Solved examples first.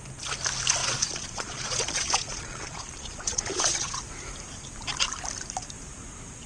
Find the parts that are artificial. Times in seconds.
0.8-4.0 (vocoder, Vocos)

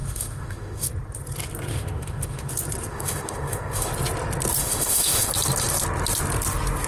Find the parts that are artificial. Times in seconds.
0.0-0.9 (autoencoder, DAC-VAE); 1.7-2.5; 2.9-3.9; 4.6-5.3

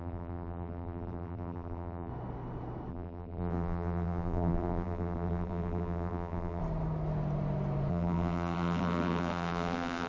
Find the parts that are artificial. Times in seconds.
0.0-2.1 (vocoder, BigVGAN v2); 2.9-6.6; 7.9-10.1

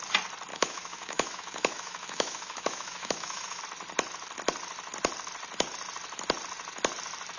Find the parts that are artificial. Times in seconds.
0.5-3.6 (autoencoder, DAC-VAE)